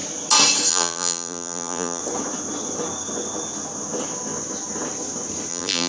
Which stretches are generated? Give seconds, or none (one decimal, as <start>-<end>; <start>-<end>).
0.7-2.0; 5.5-5.9